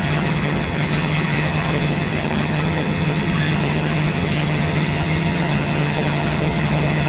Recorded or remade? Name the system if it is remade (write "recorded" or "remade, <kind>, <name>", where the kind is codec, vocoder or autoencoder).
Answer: remade, vocoder, HiFi-GAN